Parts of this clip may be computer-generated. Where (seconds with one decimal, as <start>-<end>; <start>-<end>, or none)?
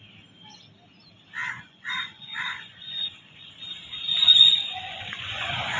1.4-3.5; 4.1-5.8